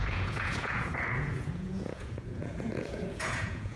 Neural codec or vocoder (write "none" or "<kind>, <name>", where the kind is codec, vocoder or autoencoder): vocoder, Vocos